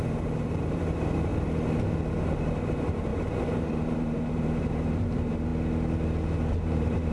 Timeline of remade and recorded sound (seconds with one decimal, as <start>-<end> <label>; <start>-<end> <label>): 0.0-1.3 remade; 1.3-2.1 recorded; 2.1-5.5 remade; 5.5-6.6 recorded; 6.6-7.1 remade